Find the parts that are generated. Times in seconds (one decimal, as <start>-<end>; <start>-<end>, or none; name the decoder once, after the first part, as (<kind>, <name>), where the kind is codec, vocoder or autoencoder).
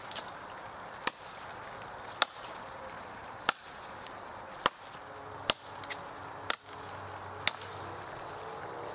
2.2-4.3 (vocoder, BigVGAN v2)